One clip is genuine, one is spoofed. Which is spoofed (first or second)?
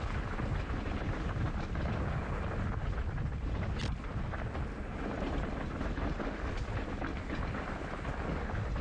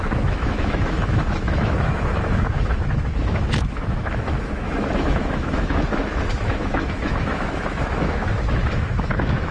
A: second